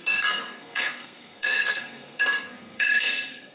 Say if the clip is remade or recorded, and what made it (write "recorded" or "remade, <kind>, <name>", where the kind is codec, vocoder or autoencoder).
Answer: remade, codec, SNAC